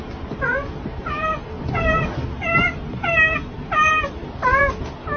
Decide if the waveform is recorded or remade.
recorded